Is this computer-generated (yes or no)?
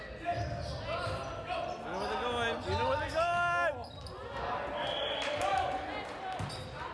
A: no